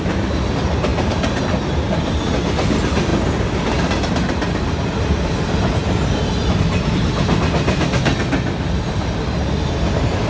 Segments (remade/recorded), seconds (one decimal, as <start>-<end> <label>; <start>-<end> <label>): 0.0-10.3 recorded